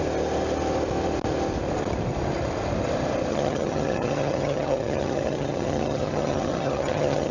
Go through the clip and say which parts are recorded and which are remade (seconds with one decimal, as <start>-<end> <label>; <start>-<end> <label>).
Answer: 0.0-3.3 recorded; 3.3-7.3 remade